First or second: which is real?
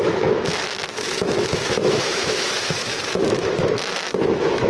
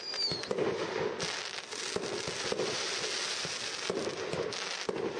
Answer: second